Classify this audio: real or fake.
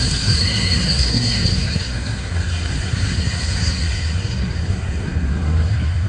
fake